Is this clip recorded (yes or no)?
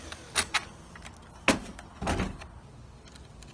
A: yes